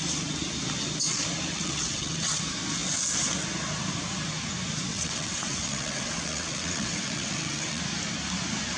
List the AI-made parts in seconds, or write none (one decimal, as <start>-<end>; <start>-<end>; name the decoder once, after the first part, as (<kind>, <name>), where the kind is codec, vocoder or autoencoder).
1.5-2.4 (vocoder, WaveNeXt); 4.9-7.8